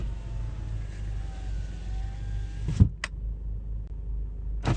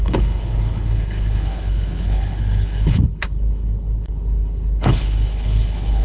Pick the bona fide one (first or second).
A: first